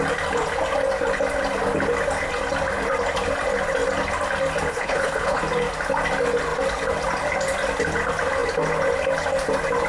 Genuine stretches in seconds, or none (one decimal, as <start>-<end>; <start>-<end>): 0.0-4.7; 5.4-9.9